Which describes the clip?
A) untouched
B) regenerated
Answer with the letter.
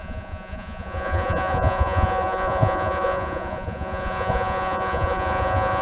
B